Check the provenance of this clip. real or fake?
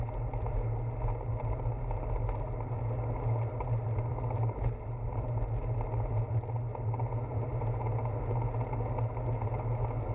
real